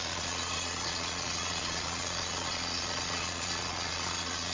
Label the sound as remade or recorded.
remade